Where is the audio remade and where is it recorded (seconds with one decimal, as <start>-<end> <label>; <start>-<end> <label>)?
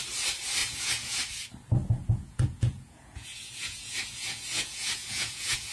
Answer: 0.0-0.6 recorded; 0.6-1.2 remade; 1.2-2.0 recorded; 2.0-5.7 remade